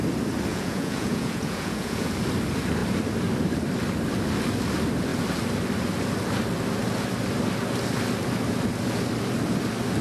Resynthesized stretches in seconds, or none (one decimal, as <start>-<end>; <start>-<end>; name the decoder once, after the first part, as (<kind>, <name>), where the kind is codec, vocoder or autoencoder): 0.5-2.1 (vocoder, Vocos)